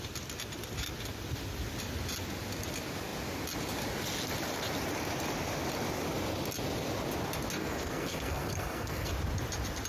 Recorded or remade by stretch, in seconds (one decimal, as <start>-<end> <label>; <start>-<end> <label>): 0.0-7.6 recorded; 7.6-9.1 remade; 9.1-9.9 recorded